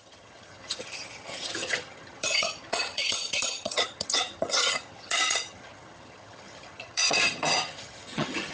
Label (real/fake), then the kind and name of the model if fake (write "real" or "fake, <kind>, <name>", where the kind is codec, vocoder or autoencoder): fake, vocoder, HiFi-GAN